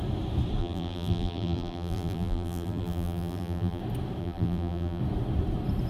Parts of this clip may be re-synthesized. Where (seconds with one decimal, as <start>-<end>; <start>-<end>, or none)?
0.6-3.8; 4.2-5.0